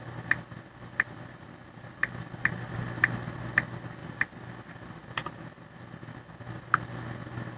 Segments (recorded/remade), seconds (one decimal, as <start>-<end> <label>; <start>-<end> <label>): 0.0-7.6 recorded